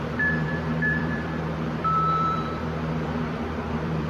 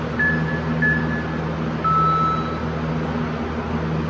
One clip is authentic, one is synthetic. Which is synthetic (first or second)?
first